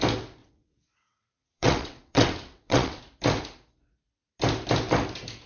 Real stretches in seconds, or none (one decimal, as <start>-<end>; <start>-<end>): 0.0-0.4; 3.0-5.5